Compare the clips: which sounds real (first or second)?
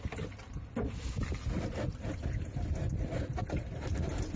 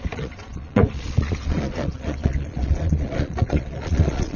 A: first